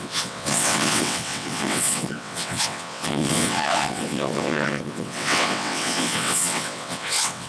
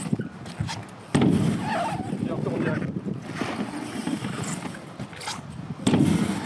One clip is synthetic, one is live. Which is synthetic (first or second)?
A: first